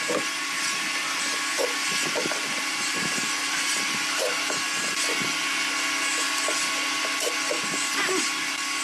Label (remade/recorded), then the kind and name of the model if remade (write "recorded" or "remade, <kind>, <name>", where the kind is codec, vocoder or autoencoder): recorded